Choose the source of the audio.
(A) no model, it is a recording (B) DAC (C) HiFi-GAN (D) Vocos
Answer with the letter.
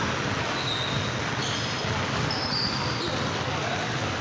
A